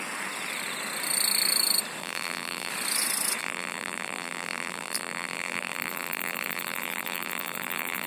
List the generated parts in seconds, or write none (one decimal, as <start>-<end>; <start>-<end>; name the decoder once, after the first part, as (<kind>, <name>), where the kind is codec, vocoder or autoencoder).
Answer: 2.0-2.7 (vocoder, BigVGAN v2); 3.4-8.1